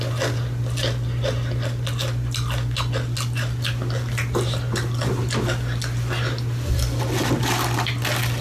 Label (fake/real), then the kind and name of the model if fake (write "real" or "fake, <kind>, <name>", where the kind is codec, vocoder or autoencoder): real